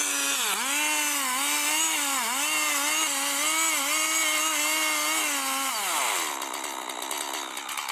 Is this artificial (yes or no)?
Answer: no